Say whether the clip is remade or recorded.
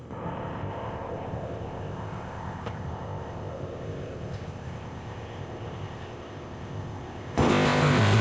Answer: remade